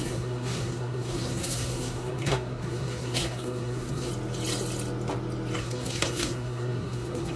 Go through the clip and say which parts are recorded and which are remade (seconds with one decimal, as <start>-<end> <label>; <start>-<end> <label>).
0.0-4.1 remade; 4.1-5.6 recorded; 5.6-7.4 remade